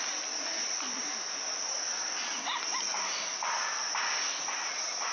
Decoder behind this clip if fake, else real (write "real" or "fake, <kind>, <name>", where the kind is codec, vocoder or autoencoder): real